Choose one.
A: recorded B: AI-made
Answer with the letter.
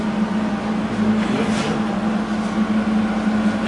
A